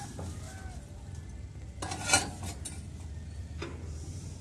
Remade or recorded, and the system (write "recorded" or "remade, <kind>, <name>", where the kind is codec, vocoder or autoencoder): recorded